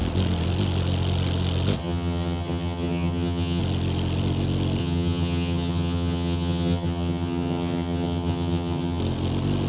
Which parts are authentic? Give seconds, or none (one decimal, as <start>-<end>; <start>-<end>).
0.0-1.8; 3.6-4.8; 9.0-9.7